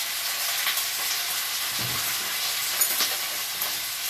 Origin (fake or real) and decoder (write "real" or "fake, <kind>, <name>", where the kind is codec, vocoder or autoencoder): real